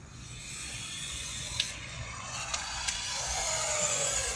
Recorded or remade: remade